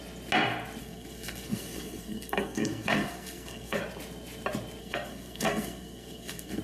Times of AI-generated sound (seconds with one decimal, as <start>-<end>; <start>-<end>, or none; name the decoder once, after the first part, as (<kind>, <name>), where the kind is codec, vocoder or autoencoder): 0.8-3.8 (codec, SNAC); 4.8-6.6